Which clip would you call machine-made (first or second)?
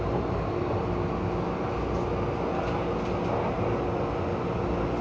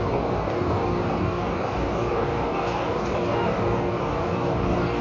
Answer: second